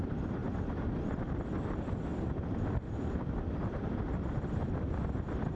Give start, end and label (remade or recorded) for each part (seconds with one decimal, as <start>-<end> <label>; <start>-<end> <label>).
0.0-0.4 remade; 0.4-1.6 recorded; 1.6-5.6 remade